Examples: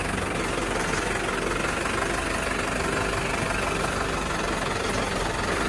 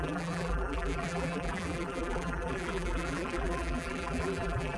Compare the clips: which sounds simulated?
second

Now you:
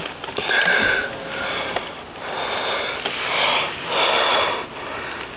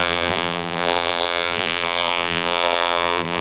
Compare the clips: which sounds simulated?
second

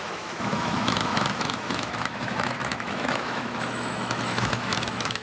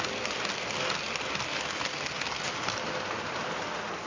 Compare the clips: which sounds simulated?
first